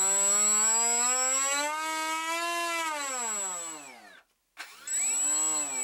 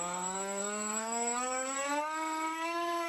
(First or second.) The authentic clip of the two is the first